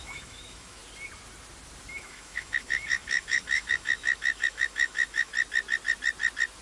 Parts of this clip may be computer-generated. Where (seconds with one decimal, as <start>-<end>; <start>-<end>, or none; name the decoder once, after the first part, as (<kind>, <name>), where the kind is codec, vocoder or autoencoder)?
0.0-0.8 (autoencoder, DAC-VAE); 1.9-5.3